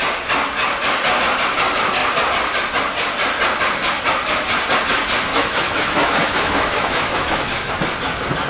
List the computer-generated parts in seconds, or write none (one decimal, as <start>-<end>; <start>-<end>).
5.3-7.7